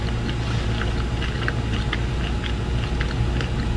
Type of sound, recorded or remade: recorded